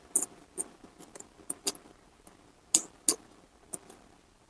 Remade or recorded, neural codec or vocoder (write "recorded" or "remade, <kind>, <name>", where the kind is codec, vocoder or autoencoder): recorded